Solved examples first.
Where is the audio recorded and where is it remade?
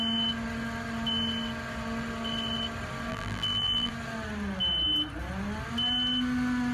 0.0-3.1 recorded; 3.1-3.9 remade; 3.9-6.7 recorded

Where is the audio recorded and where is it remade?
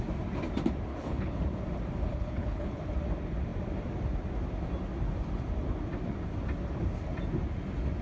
0.0-0.9 recorded; 0.9-1.4 remade; 1.4-2.1 recorded; 2.1-2.8 remade; 2.8-8.0 recorded